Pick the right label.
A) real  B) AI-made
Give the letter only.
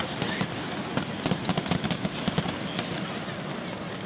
A